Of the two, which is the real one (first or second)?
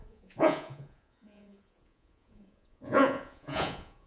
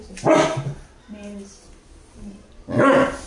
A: second